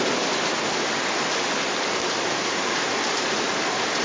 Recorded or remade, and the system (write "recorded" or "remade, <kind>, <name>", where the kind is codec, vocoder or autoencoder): recorded